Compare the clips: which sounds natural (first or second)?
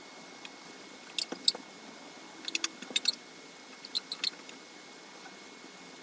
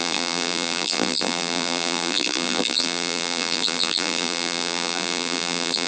first